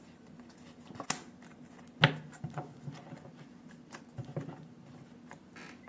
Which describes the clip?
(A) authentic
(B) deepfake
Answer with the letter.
A